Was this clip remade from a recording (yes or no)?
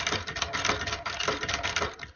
no